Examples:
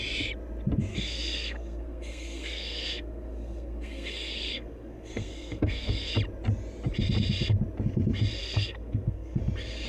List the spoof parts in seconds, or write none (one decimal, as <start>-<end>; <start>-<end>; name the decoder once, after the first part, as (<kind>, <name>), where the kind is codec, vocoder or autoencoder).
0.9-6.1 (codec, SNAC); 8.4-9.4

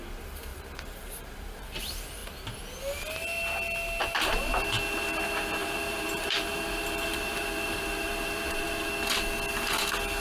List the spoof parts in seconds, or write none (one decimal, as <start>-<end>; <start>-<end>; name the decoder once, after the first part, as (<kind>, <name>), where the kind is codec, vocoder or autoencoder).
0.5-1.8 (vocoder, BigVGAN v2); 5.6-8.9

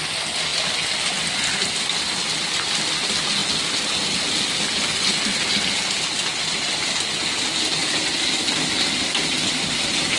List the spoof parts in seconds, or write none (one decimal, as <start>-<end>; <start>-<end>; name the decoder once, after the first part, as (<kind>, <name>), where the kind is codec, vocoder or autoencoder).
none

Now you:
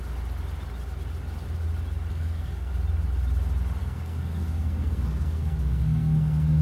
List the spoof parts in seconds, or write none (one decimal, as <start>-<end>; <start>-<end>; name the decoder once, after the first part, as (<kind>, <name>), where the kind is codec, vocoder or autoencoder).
2.1-2.7 (codec, SNAC); 3.8-6.6

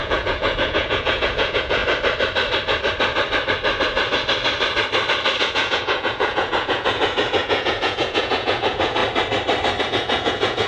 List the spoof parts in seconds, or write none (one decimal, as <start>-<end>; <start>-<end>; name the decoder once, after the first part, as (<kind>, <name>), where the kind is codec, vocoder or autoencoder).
0.0-1.8 (vocoder, Vocos); 5.4-9.0; 9.8-10.7

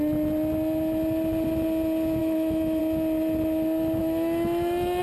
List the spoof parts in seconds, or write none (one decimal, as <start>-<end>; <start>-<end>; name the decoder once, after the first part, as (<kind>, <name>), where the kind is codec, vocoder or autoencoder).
2.2-2.8 (autoencoder, DAC-VAE); 4.0-5.0